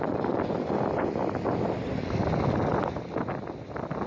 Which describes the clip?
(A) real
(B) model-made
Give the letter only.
A